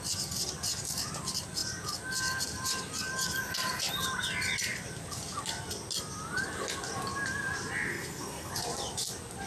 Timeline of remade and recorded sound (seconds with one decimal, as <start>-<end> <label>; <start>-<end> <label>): 0.0-7.9 recorded; 7.9-8.5 remade; 8.5-9.5 recorded